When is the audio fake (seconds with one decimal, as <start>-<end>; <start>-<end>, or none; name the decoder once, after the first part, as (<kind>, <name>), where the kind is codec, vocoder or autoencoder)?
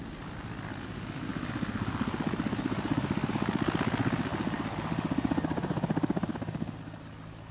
none